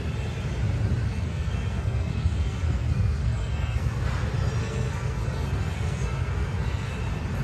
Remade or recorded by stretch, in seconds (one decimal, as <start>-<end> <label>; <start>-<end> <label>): 0.0-1.1 recorded; 1.1-4.1 remade; 4.1-4.6 recorded; 4.6-6.9 remade; 6.9-7.4 recorded